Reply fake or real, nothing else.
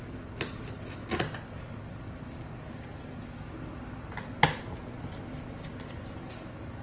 real